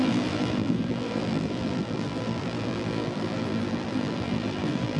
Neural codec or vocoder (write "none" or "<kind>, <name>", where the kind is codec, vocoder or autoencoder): vocoder, BigVGAN v2